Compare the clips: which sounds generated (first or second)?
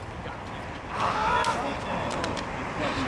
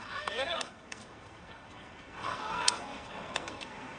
second